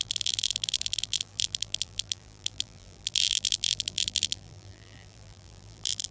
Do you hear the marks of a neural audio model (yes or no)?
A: yes